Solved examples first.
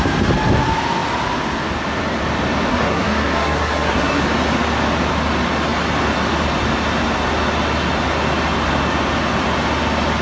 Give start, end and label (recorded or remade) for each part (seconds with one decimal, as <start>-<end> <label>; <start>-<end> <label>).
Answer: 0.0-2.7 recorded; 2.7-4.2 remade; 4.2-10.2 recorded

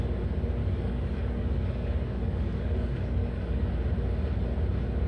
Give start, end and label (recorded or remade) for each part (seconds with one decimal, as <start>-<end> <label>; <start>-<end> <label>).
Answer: 0.0-0.6 recorded; 0.6-3.7 remade; 3.7-5.1 recorded

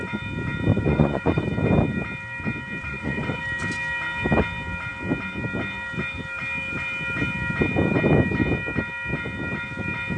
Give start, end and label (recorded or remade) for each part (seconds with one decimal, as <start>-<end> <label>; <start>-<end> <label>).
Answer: 0.0-0.7 recorded; 0.7-1.5 remade; 1.5-2.8 recorded; 2.8-3.4 remade; 3.4-10.2 recorded